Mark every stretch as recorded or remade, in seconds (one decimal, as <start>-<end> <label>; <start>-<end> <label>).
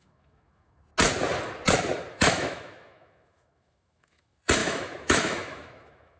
0.0-0.9 remade; 0.9-2.1 recorded; 2.1-6.2 remade